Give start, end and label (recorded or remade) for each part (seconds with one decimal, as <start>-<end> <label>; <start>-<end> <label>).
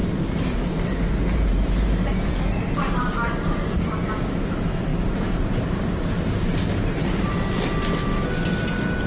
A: 0.0-3.8 remade; 3.8-4.9 recorded; 4.9-7.0 remade; 7.0-9.1 recorded